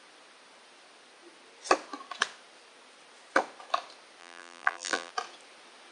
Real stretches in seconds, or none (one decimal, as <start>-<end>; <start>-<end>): 0.0-4.2; 5.1-5.9